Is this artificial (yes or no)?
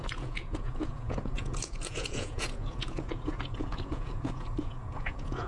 yes